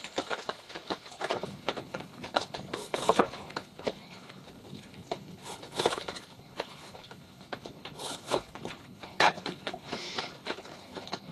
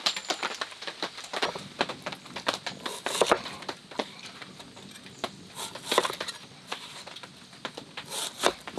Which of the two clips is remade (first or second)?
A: first